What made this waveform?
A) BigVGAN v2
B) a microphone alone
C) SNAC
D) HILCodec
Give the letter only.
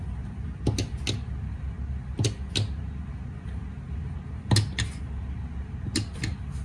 B